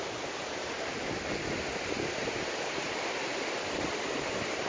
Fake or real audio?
real